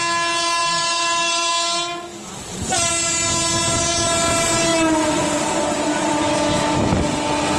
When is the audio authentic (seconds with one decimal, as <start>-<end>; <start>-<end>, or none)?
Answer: 0.0-0.6; 1.5-2.1; 2.9-4.7; 6.2-7.6